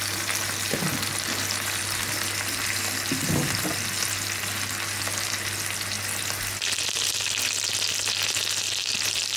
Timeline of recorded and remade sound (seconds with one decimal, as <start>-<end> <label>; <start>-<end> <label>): 0.0-9.4 recorded